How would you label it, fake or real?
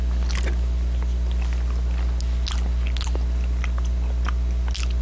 real